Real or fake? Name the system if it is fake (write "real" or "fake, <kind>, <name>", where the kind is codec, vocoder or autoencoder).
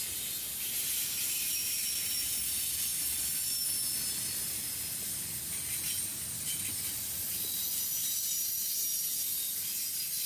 real